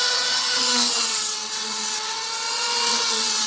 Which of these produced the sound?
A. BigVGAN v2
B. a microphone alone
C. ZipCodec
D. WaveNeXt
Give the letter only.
D